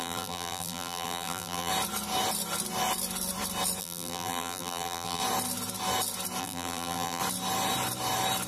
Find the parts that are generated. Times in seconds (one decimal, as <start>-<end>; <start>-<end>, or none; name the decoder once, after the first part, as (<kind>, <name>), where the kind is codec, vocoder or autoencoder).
0.0-1.7 (vocoder, BigVGAN v2); 3.8-5.2; 6.4-7.2

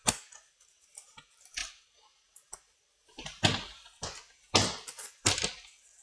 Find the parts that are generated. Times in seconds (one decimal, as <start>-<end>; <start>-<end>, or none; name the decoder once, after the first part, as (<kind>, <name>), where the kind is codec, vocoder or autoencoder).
none

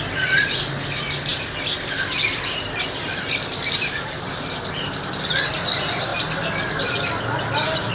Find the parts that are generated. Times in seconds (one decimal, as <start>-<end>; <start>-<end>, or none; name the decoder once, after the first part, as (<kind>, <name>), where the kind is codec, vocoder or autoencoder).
1.3-3.9 (vocoder, BigVGAN v2); 6.1-7.9

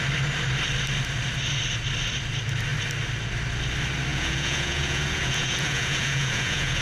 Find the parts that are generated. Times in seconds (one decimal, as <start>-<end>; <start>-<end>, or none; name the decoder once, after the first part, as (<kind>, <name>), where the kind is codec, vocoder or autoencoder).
4.1-6.8 (vocoder, Vocos)

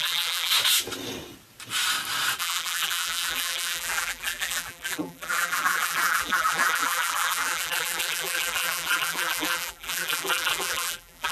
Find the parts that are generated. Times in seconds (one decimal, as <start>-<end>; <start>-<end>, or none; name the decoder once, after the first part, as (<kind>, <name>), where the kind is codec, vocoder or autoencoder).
0.0-0.5 (vocoder, BigVGAN v2); 2.4-11.3